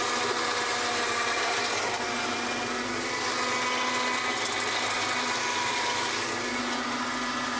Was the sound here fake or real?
real